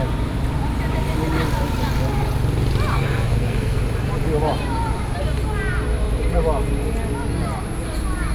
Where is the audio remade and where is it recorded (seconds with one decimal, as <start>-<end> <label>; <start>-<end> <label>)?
0.0-2.9 recorded; 2.9-3.8 remade; 3.8-8.3 recorded